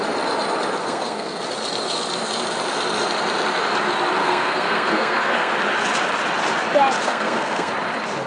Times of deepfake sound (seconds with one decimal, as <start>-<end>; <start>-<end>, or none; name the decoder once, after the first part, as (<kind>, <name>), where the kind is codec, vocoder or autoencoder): 0.8-1.4 (codec, SNAC); 4.2-5.5; 7.0-7.7